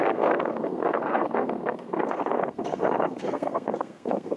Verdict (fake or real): fake